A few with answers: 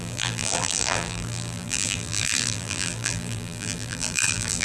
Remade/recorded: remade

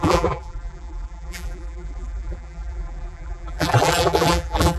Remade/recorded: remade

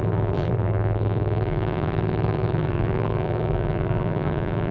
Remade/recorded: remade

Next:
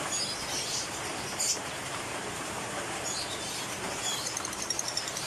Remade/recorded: remade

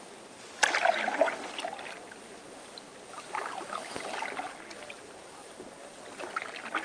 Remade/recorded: recorded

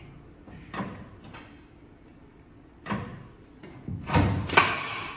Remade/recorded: remade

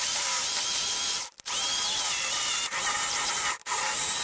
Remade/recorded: remade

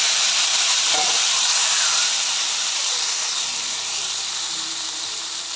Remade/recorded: remade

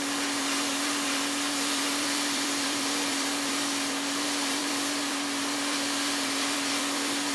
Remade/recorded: remade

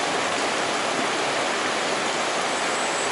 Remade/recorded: recorded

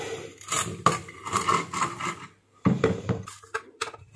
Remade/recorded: remade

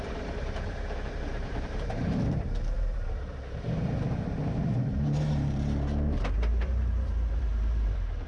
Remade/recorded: remade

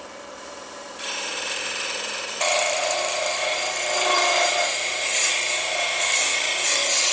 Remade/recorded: remade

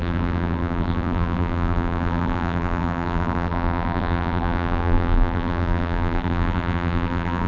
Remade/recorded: remade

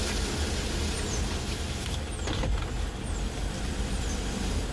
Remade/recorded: recorded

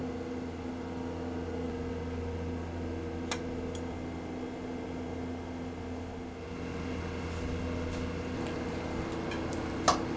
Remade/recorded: recorded